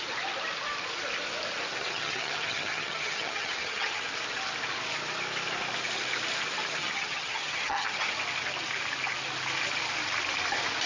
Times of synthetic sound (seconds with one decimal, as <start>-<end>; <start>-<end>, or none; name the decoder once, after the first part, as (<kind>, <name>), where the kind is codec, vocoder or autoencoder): 1.8-4.0 (vocoder, HiFi-GAN); 6.8-8.1